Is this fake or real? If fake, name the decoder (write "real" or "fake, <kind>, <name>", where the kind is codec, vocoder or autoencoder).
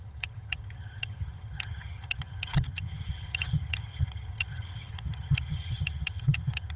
fake, vocoder, HiFi-GAN